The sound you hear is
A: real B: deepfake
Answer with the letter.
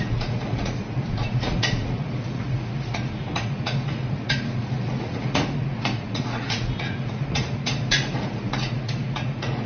B